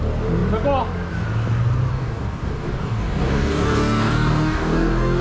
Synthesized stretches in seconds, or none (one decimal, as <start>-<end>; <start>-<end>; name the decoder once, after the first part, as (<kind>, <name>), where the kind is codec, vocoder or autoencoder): 1.9-5.2 (codec, DAC)